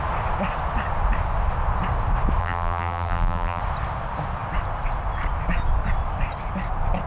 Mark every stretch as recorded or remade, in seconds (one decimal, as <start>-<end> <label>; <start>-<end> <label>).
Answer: 0.0-2.4 recorded; 2.4-3.6 remade; 3.6-7.1 recorded